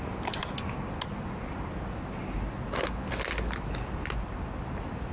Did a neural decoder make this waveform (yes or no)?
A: no